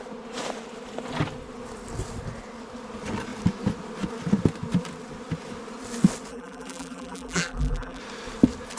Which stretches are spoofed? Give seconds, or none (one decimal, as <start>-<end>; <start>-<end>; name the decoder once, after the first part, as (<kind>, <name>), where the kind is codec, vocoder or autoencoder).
6.3-8.0 (vocoder, BigVGAN v2)